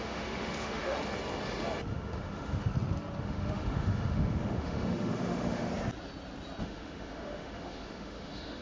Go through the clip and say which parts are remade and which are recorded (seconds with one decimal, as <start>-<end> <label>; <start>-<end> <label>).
0.0-1.0 remade; 1.0-1.9 recorded; 1.9-2.7 remade; 2.7-3.2 recorded; 3.2-5.7 remade; 5.7-6.6 recorded; 6.6-8.6 remade